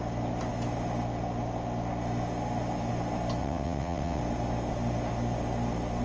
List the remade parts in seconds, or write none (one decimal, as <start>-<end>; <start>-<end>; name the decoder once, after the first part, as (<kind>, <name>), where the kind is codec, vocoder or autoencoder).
3.4-4.2 (vocoder, WaveNeXt)